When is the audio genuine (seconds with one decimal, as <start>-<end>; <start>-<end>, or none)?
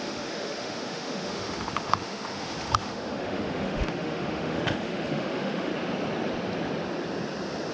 5.7-7.7